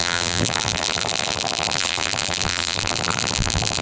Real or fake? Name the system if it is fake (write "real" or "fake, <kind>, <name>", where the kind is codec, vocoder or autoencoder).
fake, vocoder, BigVGAN v2